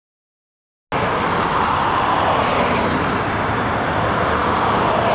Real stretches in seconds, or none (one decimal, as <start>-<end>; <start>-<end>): 0.0-5.1